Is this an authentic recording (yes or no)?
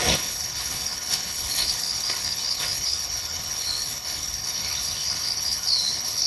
no